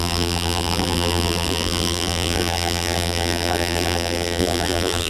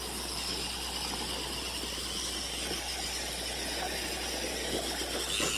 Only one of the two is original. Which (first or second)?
second